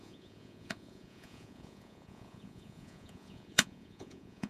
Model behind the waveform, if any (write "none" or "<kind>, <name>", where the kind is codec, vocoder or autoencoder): vocoder, Vocos